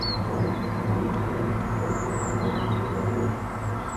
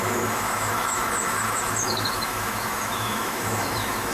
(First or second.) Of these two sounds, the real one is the first